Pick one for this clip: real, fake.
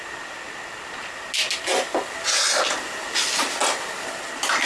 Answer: real